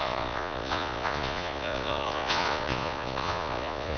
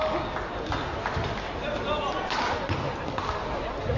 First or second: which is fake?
first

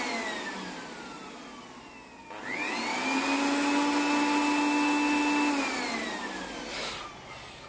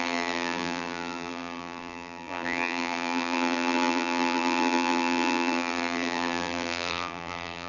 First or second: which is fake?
second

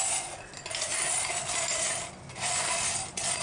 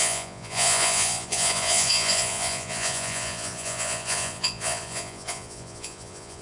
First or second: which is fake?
second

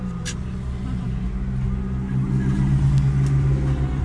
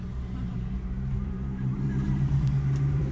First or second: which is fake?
second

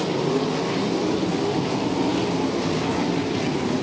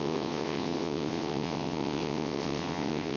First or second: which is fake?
second